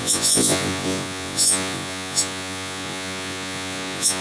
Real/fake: fake